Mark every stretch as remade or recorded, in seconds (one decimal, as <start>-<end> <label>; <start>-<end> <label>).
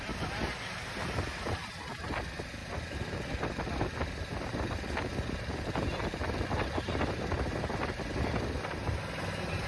0.0-9.7 recorded